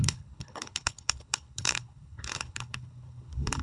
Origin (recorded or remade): remade